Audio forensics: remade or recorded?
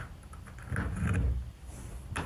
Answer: recorded